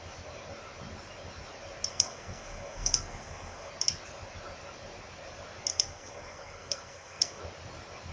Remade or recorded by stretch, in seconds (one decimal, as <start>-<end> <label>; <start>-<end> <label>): 0.0-1.9 recorded; 1.9-3.7 remade; 3.7-5.7 recorded; 5.7-7.4 remade; 7.4-8.1 recorded